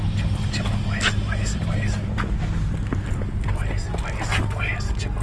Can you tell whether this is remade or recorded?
recorded